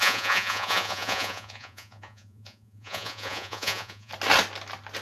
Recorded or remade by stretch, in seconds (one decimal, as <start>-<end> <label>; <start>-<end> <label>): 0.0-4.1 remade; 4.1-5.0 recorded